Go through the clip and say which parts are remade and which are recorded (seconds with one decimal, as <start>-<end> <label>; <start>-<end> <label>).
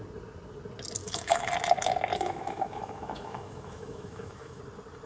0.0-1.0 recorded; 1.0-1.5 remade; 1.5-2.1 recorded; 2.1-4.6 remade; 4.6-5.1 recorded